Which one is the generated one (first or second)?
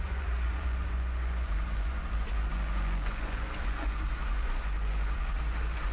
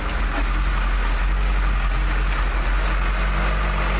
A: first